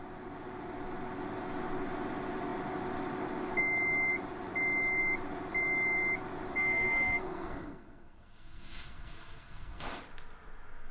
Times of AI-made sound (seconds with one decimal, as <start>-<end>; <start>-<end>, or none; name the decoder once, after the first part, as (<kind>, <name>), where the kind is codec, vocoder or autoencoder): 6.5-10.0 (codec, SNAC)